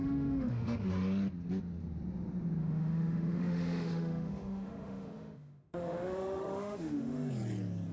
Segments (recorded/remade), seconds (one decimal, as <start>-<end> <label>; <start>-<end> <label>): 0.0-0.9 remade; 0.9-2.6 recorded; 2.6-7.3 remade; 7.3-7.9 recorded